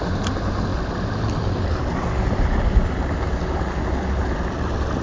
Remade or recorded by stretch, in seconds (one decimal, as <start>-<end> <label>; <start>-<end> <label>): 0.0-5.0 recorded